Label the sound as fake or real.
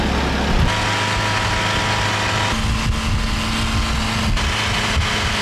real